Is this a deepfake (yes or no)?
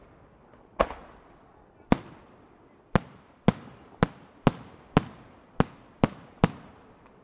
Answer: no